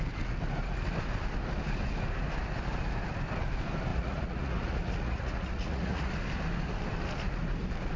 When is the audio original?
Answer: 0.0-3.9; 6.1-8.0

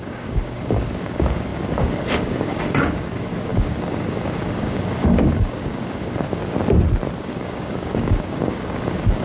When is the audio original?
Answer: 6.4-7.2

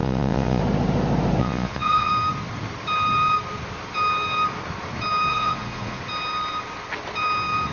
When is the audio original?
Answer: 0.6-1.4; 2.1-5.3; 6.0-7.7

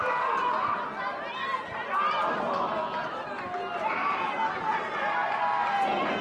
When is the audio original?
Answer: 0.0-6.2

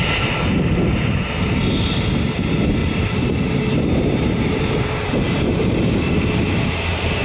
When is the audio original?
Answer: 0.0-0.9; 1.6-2.8

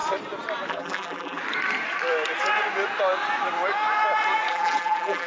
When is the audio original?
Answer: 0.0-0.7; 1.4-4.5

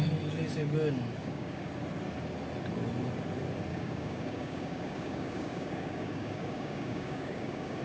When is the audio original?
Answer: 0.0-1.2; 1.7-3.7